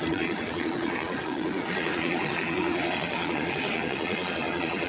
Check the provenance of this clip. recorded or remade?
remade